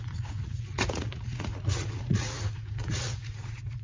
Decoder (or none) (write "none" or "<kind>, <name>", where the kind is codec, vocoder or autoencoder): vocoder, Vocos